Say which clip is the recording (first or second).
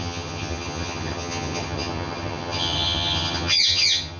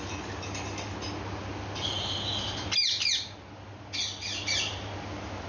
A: second